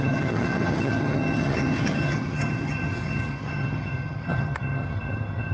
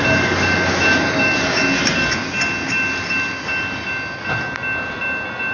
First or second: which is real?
second